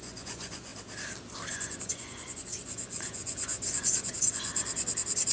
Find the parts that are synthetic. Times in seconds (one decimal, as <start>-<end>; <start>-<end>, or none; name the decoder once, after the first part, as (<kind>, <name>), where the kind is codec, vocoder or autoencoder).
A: 0.0-0.7 (vocoder, Vocos); 1.5-4.5